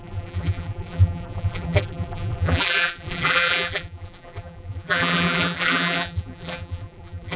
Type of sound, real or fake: fake